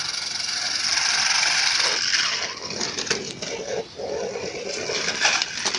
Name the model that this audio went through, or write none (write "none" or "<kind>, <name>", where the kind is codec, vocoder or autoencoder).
none